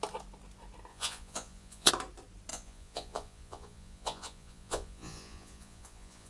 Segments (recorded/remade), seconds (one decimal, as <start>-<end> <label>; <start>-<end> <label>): 0.0-0.9 recorded; 0.9-1.9 remade; 1.9-2.5 recorded; 2.5-6.3 remade